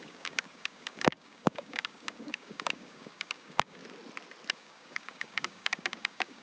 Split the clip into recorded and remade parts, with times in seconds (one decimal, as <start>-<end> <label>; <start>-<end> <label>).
0.0-3.8 remade; 3.8-4.5 recorded; 4.5-6.4 remade